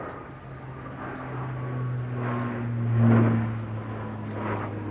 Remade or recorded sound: recorded